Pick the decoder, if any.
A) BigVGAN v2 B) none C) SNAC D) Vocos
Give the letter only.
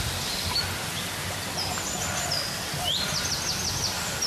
B